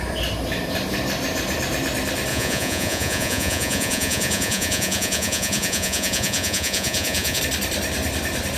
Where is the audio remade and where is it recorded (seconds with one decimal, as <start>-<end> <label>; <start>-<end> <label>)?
0.0-2.3 recorded; 2.3-7.4 remade; 7.4-8.6 recorded